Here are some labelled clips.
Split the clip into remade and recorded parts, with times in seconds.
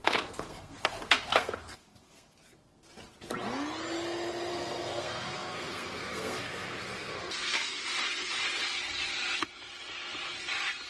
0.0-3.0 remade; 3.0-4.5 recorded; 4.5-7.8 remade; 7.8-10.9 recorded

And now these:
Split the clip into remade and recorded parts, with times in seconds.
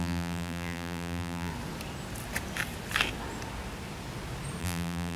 0.0-1.5 remade; 1.5-4.6 recorded; 4.6-5.2 remade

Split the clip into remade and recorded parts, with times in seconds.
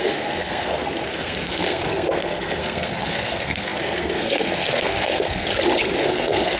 0.0-5.5 remade; 5.5-6.0 recorded; 6.0-6.6 remade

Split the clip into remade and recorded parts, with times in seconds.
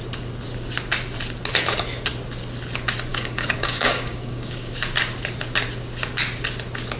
0.0-3.1 recorded; 3.1-4.7 remade; 4.7-7.0 recorded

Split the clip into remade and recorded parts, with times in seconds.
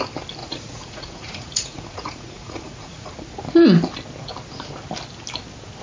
0.0-0.4 recorded; 0.4-3.1 remade; 3.1-5.8 recorded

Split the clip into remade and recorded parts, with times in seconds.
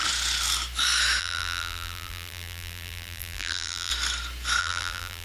0.0-1.2 recorded; 1.2-3.9 remade; 3.9-4.6 recorded; 4.6-5.2 remade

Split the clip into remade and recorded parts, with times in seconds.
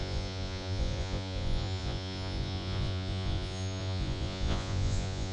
0.0-5.3 remade